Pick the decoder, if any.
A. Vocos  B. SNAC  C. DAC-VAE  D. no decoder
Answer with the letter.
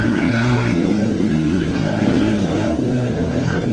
B